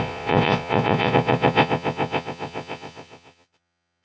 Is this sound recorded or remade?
remade